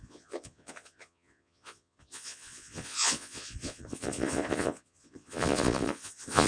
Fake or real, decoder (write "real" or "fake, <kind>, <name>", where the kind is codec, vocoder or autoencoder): fake, vocoder, Vocos